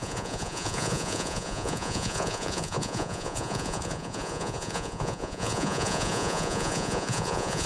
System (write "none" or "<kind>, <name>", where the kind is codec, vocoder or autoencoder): vocoder, Vocos